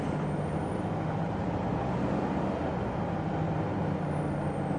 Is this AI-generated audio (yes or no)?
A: no